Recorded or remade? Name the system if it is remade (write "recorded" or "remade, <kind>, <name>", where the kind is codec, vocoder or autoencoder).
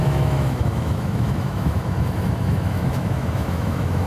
remade, autoencoder, DAC-VAE